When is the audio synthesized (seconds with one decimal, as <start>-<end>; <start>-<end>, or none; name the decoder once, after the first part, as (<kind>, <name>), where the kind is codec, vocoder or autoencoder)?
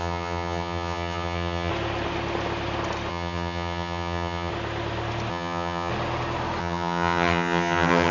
0.0-1.7 (vocoder, HiFi-GAN); 3.1-4.5; 5.3-5.9; 6.6-8.1